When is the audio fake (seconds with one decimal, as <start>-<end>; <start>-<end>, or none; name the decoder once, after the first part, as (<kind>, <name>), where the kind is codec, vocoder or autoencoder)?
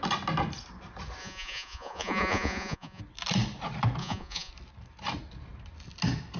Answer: 1.2-3.0 (vocoder, Vocos); 4.0-4.5